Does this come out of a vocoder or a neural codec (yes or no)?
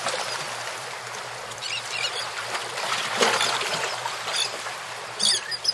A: yes